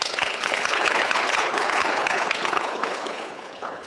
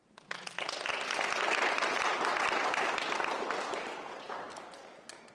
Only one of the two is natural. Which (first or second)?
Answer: second